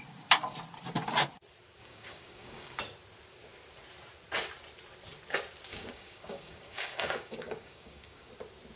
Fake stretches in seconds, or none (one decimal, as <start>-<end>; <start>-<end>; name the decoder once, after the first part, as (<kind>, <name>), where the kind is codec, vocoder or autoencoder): 1.8-2.8 (codec, DAC); 5.7-8.3

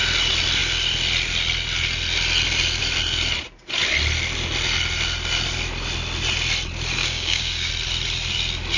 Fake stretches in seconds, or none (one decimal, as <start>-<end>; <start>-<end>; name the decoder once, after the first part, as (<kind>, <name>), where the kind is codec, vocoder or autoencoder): 7.0-7.7 (codec, DAC)

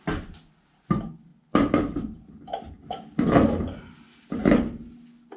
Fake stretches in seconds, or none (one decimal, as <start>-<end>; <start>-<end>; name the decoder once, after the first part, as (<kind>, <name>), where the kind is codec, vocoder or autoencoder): none

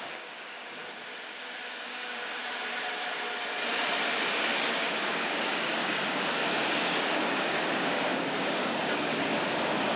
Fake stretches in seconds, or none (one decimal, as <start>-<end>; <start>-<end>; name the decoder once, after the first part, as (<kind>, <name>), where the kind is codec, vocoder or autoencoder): 0.0-0.8 (codec, DAC); 1.7-2.4; 4.3-10.0

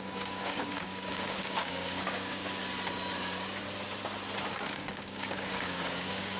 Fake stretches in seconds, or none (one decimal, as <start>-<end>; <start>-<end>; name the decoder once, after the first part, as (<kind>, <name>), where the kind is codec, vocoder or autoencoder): 0.0-2.6 (codec, DAC); 4.5-6.4

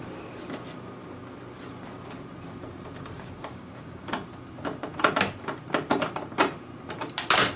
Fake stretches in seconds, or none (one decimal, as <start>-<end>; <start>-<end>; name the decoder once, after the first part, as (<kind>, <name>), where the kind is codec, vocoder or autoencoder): 3.5-4.1 (codec, DAC)

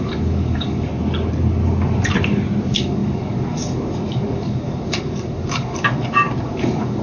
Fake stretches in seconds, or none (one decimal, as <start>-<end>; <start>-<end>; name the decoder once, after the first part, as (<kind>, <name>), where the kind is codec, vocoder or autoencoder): 0.0-0.9 (codec, DAC); 2.6-7.0

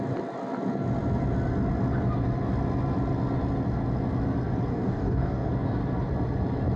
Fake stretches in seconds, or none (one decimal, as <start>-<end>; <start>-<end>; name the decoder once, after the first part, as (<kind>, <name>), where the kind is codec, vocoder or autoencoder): 4.7-5.5 (codec, DAC)